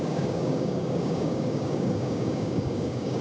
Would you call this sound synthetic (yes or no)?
yes